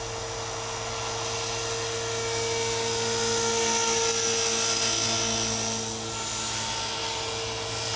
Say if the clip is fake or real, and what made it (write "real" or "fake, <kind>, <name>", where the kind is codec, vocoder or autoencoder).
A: real